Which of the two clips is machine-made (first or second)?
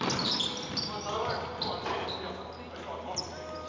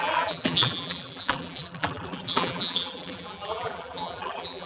second